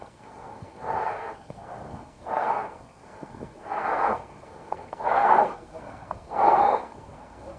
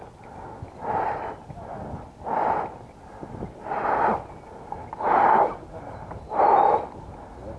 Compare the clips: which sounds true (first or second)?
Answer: second